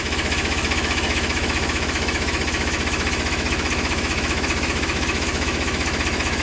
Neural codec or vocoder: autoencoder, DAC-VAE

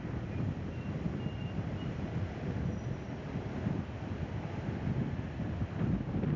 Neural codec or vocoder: none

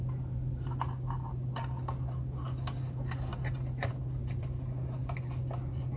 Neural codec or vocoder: none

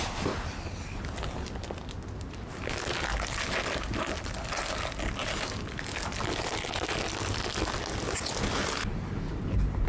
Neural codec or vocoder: none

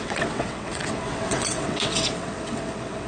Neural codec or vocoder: vocoder, WaveNeXt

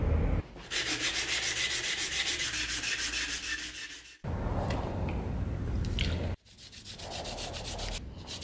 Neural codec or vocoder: none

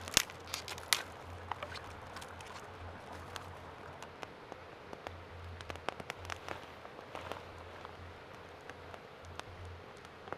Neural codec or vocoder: none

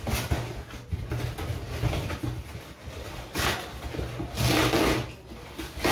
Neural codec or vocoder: none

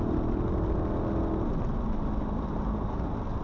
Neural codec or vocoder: none